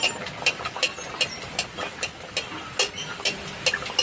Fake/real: real